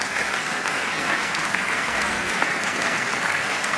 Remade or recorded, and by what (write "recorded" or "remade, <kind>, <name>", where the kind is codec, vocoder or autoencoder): remade, codec, SNAC